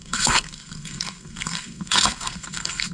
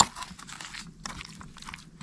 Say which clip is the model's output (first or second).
first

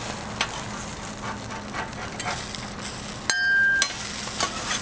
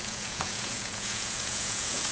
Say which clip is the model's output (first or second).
second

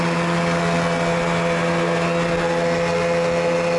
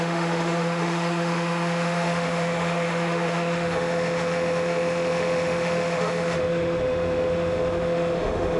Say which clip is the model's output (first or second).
second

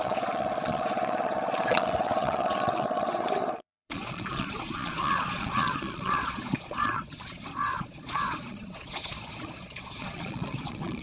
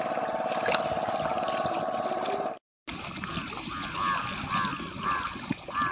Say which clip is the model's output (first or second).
first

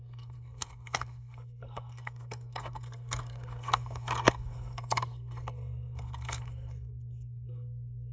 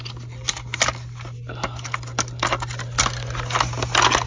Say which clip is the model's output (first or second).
first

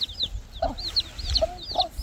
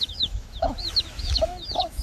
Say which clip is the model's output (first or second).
second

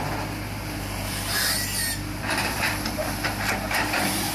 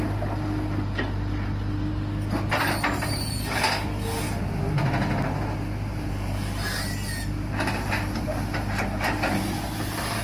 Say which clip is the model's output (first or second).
first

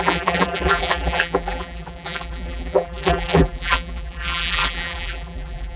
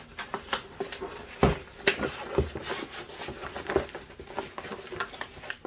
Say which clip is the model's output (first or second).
first